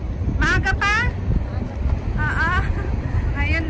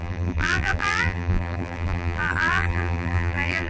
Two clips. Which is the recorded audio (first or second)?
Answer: first